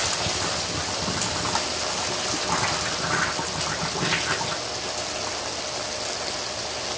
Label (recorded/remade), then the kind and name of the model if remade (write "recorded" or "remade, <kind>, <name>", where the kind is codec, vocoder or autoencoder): recorded